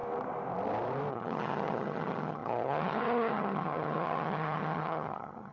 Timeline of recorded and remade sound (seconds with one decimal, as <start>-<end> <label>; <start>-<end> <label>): 0.0-1.1 recorded; 1.1-5.5 remade